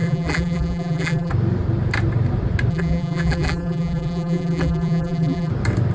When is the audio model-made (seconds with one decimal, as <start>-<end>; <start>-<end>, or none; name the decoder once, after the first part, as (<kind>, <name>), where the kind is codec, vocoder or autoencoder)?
0.0-1.3 (vocoder, BigVGAN v2); 2.7-5.5